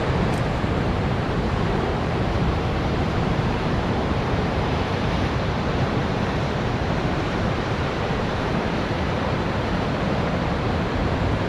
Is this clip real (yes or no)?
no